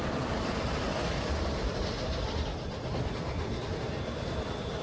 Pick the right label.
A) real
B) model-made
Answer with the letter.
B